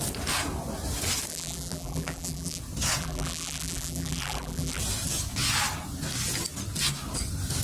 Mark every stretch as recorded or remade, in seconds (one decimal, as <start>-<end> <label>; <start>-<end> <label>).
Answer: 0.0-1.3 recorded; 1.3-2.6 remade; 2.6-3.0 recorded; 3.0-4.8 remade; 4.8-7.6 recorded